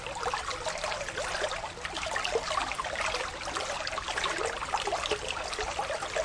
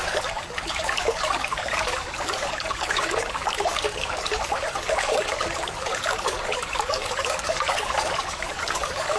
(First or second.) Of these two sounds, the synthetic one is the second